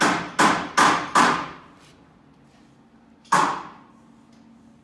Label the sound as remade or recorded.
recorded